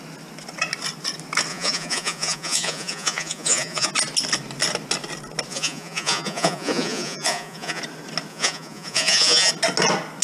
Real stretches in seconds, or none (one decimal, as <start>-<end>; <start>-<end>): 0.0-1.5; 3.9-5.5; 7.8-8.3; 9.5-10.2